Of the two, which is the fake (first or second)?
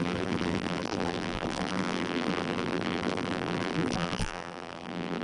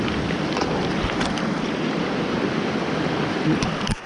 first